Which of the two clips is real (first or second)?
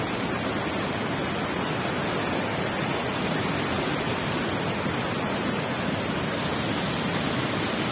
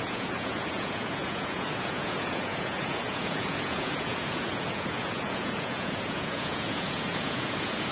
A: first